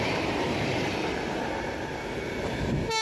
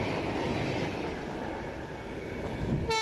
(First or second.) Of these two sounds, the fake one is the first